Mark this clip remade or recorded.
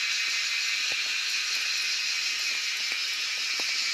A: recorded